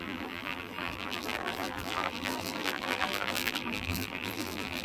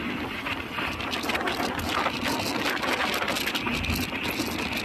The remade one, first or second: first